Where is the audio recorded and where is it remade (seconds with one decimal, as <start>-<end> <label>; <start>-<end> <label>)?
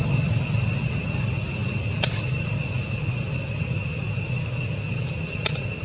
0.0-5.8 recorded